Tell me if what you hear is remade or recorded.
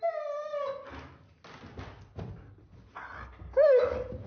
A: recorded